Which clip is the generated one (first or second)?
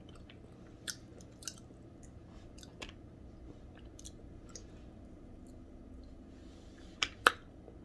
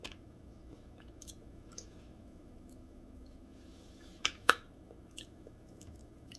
second